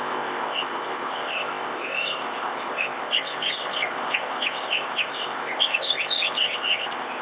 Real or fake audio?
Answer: fake